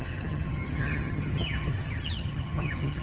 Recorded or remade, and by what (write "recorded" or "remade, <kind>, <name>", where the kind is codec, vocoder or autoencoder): remade, vocoder, HiFi-GAN